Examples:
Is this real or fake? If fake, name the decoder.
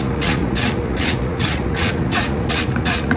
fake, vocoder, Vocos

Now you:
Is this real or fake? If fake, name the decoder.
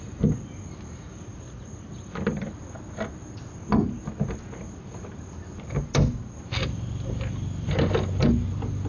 real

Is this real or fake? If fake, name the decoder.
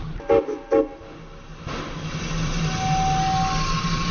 real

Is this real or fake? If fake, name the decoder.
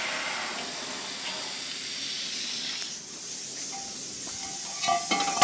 real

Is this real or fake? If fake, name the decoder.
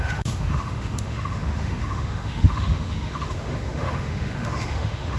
fake, autoencoder, DAC-VAE